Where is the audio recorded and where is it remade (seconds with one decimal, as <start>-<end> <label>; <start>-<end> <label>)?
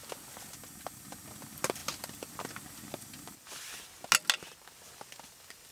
0.0-5.7 recorded